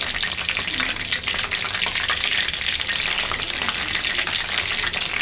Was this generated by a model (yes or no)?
no